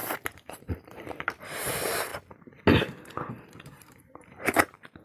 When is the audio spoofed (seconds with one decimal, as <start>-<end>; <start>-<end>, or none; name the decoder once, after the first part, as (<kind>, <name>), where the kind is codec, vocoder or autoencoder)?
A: 0.0-2.1 (vocoder, BigVGAN v2); 3.3-5.0

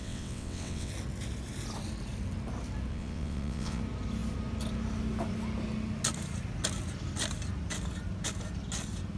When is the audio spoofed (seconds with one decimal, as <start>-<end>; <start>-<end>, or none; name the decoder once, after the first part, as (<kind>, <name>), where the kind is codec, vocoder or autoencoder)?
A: 0.0-0.9 (vocoder, WaveNeXt); 2.9-3.8

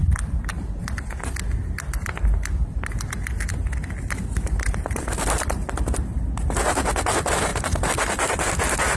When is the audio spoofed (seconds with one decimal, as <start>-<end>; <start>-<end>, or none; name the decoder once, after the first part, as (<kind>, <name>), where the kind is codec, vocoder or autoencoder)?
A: none